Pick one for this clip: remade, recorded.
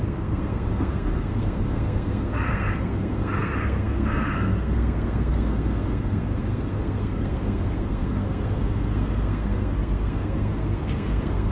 remade